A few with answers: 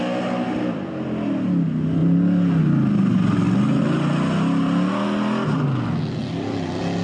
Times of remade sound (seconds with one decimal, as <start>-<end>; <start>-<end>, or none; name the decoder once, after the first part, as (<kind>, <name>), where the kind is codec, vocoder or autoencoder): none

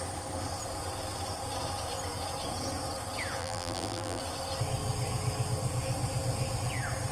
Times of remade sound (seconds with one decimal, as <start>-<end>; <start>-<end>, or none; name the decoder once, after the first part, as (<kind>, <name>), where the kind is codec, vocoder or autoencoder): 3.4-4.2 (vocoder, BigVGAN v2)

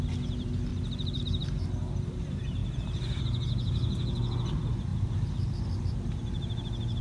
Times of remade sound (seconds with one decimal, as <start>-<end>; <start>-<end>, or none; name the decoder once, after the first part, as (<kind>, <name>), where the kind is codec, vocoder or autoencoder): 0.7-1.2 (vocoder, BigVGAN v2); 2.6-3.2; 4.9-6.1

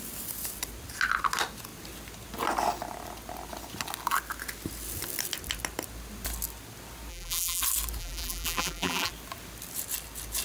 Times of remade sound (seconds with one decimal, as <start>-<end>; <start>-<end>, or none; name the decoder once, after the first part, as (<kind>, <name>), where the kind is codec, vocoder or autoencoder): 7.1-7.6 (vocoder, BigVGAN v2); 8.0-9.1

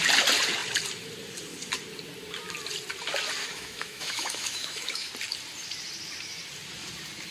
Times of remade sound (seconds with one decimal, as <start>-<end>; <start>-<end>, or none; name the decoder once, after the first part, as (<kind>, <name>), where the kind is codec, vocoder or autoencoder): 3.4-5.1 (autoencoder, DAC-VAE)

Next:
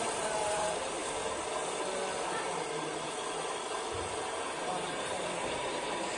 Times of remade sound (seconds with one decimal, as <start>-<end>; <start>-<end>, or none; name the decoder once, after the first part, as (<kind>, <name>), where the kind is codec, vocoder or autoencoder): 0.0-1.0 (vocoder, BigVGAN v2); 4.6-6.2

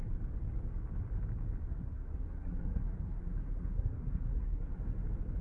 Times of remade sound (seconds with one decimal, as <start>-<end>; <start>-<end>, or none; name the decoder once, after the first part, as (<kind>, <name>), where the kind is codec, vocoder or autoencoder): 1.6-4.8 (codec, SNAC)